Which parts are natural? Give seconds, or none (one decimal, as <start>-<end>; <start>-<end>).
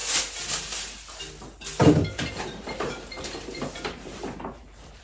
0.0-1.8